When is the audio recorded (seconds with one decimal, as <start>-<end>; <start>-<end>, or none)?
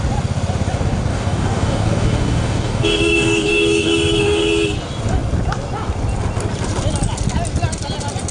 0.0-1.1; 4.5-8.3